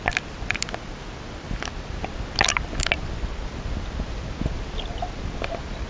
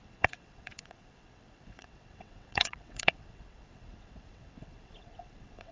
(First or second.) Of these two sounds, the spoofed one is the second